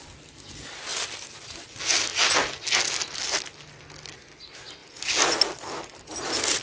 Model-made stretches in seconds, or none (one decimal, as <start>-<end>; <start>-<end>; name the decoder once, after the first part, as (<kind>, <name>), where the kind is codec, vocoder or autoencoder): none